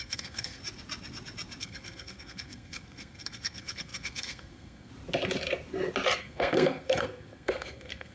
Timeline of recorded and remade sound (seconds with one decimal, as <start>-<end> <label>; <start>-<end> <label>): 0.0-0.6 remade; 0.6-1.6 recorded; 1.6-4.9 remade; 4.9-6.2 recorded; 6.2-8.1 remade